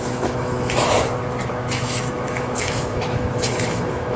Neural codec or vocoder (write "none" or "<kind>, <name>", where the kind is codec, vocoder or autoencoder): autoencoder, DAC-VAE